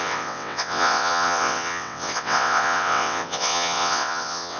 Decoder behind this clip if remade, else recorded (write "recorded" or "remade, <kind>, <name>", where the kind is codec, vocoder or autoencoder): remade, vocoder, WaveNeXt